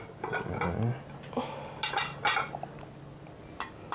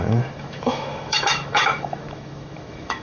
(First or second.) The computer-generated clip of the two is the second